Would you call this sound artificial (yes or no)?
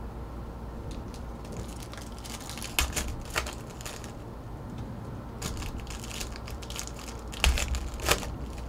no